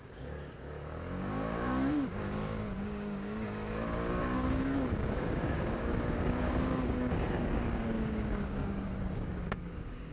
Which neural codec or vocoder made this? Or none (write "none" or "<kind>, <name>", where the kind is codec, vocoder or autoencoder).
codec, DAC